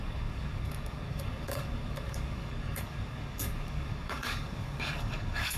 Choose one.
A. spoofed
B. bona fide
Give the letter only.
A